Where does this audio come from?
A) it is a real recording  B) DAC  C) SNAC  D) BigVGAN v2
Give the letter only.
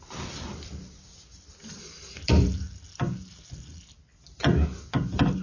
A